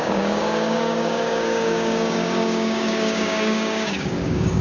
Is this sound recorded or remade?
remade